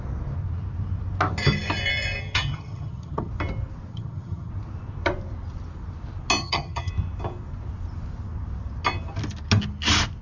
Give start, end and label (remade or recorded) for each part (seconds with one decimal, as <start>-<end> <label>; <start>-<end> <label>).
0.0-2.2 recorded; 2.2-3.3 remade; 3.3-3.9 recorded; 3.9-4.5 remade; 4.5-6.4 recorded; 6.4-6.9 remade; 6.9-10.2 recorded